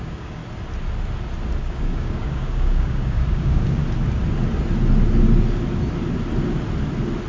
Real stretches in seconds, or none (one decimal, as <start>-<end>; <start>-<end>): 0.4-1.6; 3.8-7.3